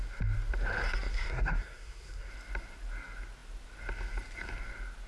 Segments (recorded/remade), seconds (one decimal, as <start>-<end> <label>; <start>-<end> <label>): 0.0-1.1 recorded; 1.1-2.3 remade; 2.3-5.1 recorded